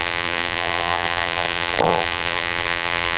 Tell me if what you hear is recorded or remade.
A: remade